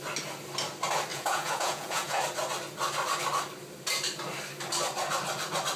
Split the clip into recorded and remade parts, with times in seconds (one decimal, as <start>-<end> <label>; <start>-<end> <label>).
0.0-1.1 recorded; 1.1-2.2 remade; 2.2-5.8 recorded